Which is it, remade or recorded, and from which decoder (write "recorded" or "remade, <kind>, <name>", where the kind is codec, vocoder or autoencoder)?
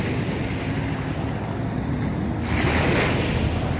recorded